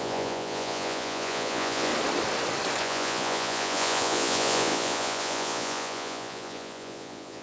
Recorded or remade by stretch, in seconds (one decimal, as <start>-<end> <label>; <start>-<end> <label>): 0.0-1.9 remade; 1.9-2.8 recorded; 2.8-7.4 remade